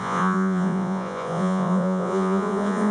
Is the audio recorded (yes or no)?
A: no